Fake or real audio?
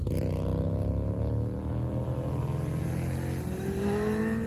real